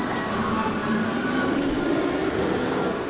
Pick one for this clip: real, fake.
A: real